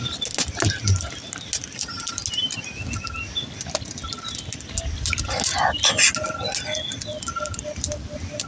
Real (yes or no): yes